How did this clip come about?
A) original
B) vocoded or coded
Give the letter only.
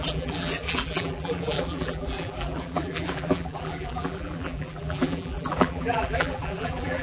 B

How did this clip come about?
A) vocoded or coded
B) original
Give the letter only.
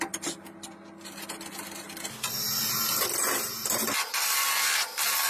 B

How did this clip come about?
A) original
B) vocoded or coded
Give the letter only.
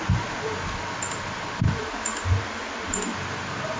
A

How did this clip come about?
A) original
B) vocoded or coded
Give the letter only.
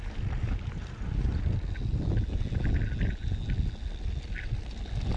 A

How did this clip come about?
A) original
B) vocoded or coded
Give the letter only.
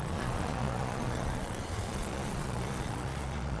B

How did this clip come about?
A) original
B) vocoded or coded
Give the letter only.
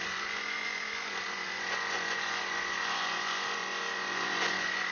B